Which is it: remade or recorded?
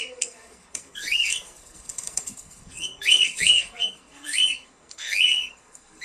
remade